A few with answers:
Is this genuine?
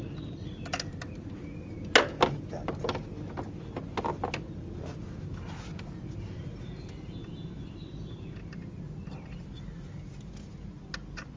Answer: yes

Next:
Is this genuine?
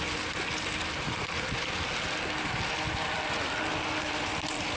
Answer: yes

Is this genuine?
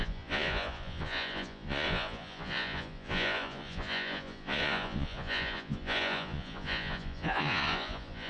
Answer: no